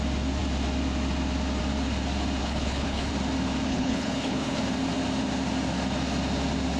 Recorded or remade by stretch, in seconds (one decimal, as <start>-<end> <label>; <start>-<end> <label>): 0.0-2.4 recorded; 2.4-3.1 remade; 3.1-3.7 recorded; 3.7-4.6 remade; 4.6-6.8 recorded